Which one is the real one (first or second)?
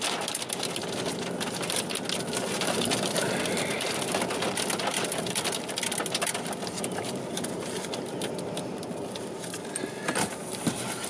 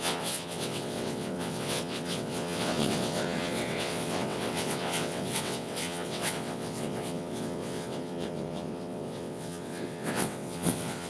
first